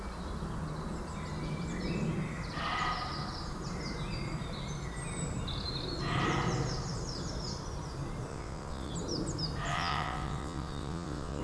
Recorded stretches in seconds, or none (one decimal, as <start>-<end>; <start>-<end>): 0.0-8.3; 8.9-9.7